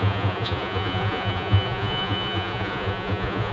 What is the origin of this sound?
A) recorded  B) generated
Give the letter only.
B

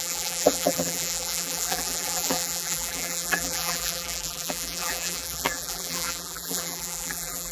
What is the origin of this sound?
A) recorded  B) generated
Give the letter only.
B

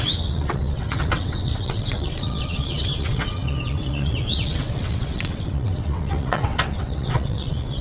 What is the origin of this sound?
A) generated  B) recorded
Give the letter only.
A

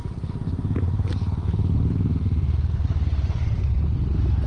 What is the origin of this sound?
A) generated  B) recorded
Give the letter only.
A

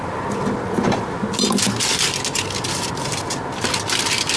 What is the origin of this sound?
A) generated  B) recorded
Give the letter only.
B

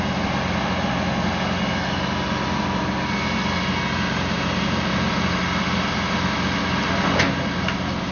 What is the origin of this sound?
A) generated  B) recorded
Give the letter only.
B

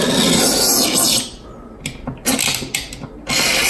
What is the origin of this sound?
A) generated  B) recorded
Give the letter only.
B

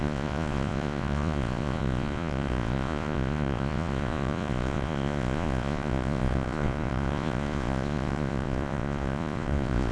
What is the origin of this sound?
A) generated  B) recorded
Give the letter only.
A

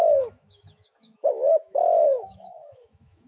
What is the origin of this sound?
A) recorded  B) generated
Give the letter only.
B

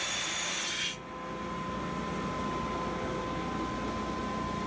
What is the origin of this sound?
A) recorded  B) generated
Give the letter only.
A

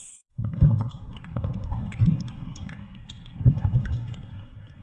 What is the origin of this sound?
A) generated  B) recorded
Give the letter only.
A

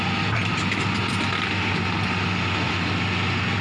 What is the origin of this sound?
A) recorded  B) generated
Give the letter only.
A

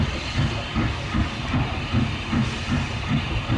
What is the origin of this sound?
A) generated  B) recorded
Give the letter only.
B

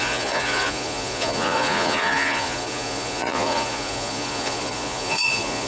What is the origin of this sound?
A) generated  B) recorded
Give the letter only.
A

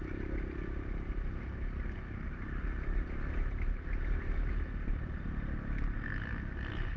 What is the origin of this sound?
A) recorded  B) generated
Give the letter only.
A